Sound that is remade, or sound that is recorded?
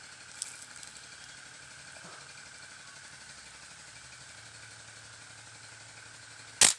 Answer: recorded